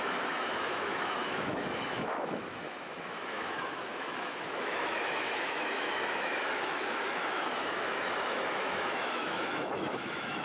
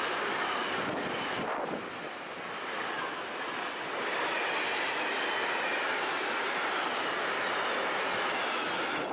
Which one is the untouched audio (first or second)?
second